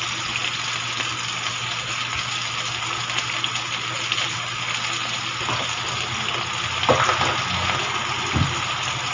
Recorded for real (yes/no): yes